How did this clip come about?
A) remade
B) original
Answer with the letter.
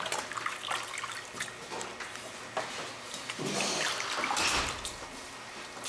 B